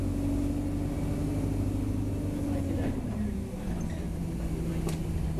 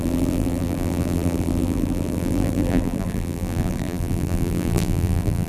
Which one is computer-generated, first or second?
second